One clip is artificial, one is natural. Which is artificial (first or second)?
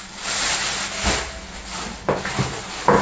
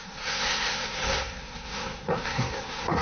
second